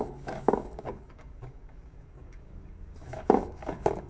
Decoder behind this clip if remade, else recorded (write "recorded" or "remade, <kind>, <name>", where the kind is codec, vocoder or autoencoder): remade, codec, DAC